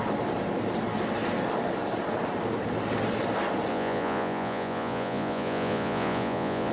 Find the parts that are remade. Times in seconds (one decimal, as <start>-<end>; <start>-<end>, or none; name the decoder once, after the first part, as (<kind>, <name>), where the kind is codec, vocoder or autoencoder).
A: 3.7-6.7 (vocoder, Vocos)